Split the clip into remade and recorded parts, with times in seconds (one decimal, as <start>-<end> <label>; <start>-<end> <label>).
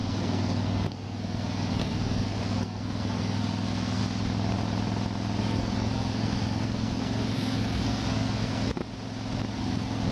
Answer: 0.0-4.0 remade; 4.0-5.4 recorded; 5.4-8.8 remade; 8.8-9.5 recorded; 9.5-10.1 remade